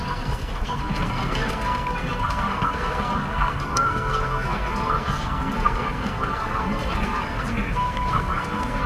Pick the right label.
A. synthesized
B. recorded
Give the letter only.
A